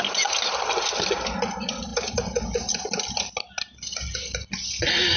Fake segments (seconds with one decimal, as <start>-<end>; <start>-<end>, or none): none

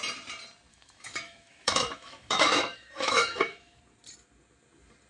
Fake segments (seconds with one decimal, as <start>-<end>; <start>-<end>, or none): 0.7-3.8

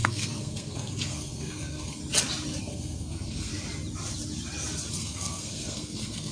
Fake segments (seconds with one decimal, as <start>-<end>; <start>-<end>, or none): 0.0-2.0; 2.6-3.5; 4.9-6.3

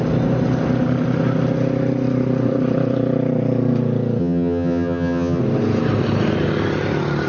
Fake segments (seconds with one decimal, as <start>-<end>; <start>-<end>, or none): 4.2-5.4